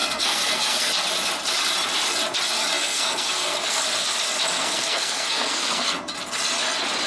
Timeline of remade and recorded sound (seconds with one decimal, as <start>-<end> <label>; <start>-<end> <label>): 0.0-0.9 remade; 0.9-2.7 recorded; 2.7-3.8 remade; 3.8-4.5 recorded; 4.5-6.0 remade; 6.0-7.1 recorded